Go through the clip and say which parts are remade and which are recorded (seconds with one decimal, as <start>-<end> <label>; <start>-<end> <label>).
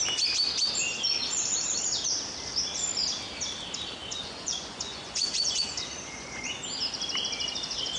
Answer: 0.0-4.0 recorded; 4.0-6.6 remade; 6.6-8.0 recorded